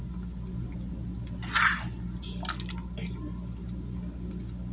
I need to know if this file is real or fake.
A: real